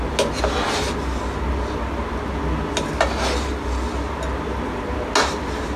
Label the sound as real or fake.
real